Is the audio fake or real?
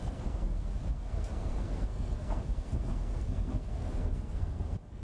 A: fake